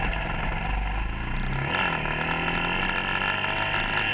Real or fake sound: real